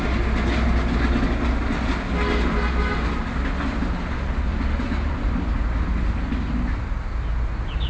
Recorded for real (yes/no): yes